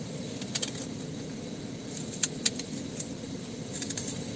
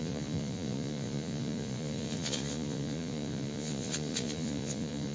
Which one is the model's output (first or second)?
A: second